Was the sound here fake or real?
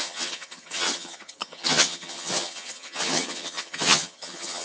fake